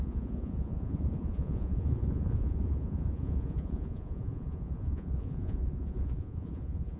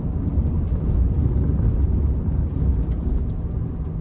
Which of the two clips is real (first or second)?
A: second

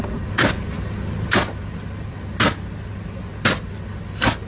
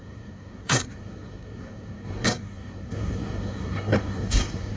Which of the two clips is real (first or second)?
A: first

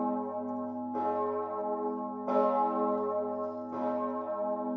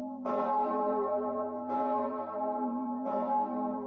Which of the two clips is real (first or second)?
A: first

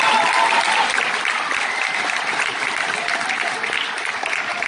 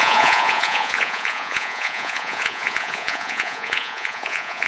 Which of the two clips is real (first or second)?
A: first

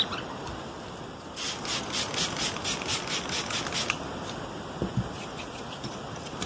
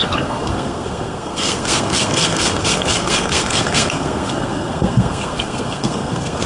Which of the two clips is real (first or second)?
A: first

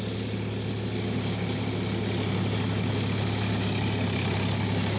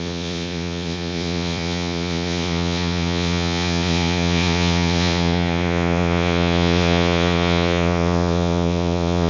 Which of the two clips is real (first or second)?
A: first